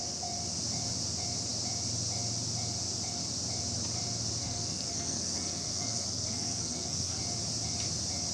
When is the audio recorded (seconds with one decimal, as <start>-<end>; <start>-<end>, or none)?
0.0-4.4; 7.2-8.3